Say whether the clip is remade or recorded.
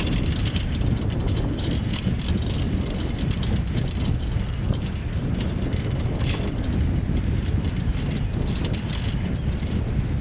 recorded